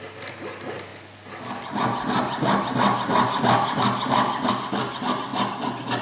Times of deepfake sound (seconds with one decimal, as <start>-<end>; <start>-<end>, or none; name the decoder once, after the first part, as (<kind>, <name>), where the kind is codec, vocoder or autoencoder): none